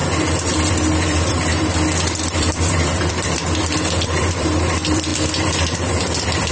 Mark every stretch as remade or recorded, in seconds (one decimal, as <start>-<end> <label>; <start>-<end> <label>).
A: 0.0-0.7 recorded; 0.7-6.5 remade